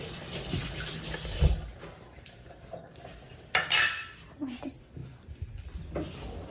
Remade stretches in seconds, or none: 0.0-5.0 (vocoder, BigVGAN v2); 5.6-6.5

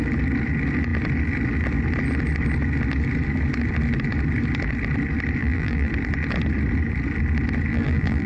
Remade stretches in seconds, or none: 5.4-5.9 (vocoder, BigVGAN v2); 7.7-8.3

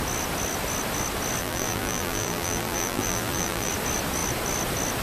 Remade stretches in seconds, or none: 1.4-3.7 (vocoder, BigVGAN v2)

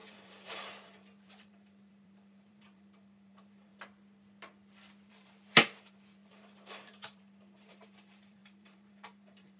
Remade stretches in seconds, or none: 0.0-3.7 (vocoder, BigVGAN v2); 5.1-9.6

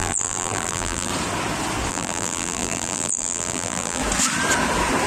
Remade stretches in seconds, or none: 0.0-1.1 (vocoder, BigVGAN v2); 1.9-4.0

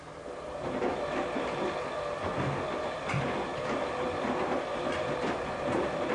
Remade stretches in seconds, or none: 2.3-3.0 (vocoder, BigVGAN v2); 3.5-4.2; 4.9-5.6